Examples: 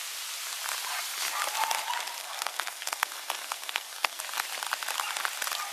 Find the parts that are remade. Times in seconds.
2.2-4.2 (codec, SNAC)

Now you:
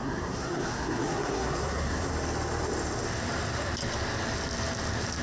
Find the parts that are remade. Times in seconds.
0.0-2.1 (codec, SNAC)

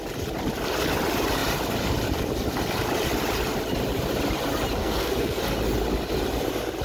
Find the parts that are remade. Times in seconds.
4.8-5.4 (codec, SNAC)

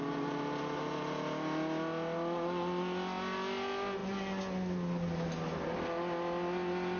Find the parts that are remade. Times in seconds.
none

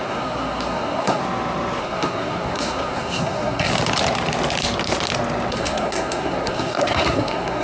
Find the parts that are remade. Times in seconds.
0.0-1.2 (codec, SNAC); 1.8-3.7; 5.5-7.6

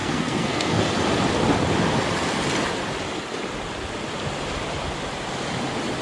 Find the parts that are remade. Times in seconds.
0.0-0.8 (codec, SNAC)